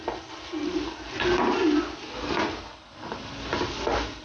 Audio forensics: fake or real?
real